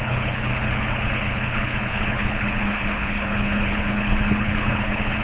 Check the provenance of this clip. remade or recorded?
remade